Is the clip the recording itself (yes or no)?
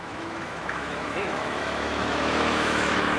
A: no